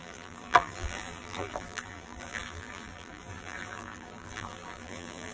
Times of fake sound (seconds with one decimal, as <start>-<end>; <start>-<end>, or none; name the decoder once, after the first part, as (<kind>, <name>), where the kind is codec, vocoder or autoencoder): 0.0-5.3 (vocoder, BigVGAN v2)